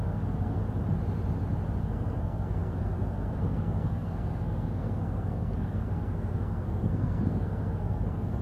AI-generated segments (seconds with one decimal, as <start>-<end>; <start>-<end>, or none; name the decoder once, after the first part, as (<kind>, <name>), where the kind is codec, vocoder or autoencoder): 0.0-0.6 (codec, SNAC); 1.8-8.4